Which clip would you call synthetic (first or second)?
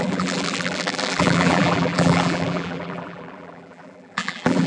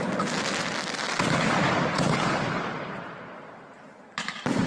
first